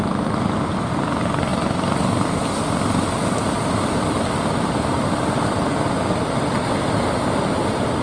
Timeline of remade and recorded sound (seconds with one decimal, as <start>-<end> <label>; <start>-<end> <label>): 0.0-8.0 recorded